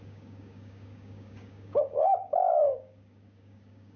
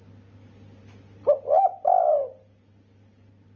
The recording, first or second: second